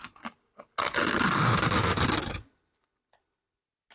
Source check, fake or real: real